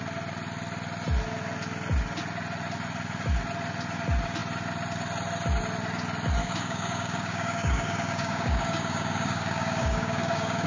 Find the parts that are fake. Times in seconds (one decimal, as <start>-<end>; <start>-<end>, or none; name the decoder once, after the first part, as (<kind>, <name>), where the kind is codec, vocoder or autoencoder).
6.4-10.7 (codec, DAC)